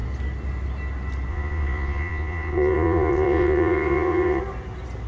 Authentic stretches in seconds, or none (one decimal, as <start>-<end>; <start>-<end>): 0.0-1.3; 4.4-5.1